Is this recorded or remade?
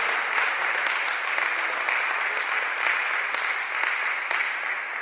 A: recorded